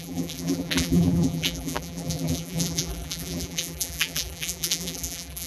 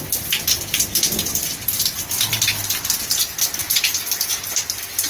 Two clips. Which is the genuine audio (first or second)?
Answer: second